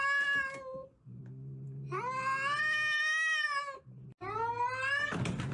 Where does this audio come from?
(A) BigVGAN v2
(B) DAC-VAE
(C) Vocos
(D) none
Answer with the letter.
D